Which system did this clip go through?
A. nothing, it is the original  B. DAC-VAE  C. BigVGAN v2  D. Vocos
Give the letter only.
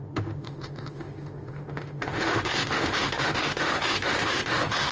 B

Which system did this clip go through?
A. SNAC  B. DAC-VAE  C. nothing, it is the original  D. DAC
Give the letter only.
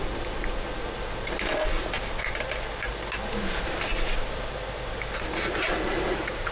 C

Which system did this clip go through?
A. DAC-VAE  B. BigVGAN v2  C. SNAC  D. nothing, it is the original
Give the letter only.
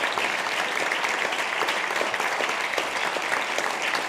D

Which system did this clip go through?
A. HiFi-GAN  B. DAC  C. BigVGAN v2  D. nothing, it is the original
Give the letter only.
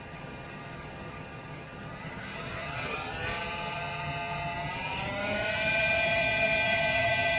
A